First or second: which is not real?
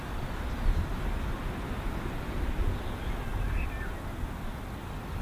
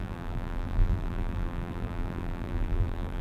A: second